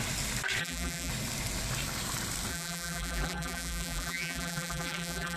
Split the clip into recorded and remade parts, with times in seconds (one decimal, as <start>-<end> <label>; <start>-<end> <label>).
0.0-0.6 recorded; 0.6-1.1 remade; 1.1-2.5 recorded; 2.5-5.4 remade